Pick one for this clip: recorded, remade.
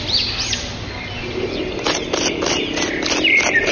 recorded